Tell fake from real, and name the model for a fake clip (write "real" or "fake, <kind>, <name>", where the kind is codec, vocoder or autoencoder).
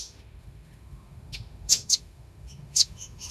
fake, autoencoder, DAC-VAE